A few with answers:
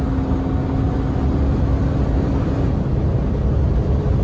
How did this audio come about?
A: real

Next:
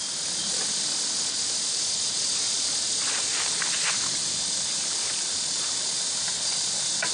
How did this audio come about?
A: real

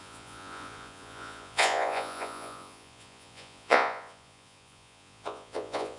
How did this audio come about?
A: fake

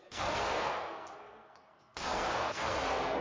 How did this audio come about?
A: fake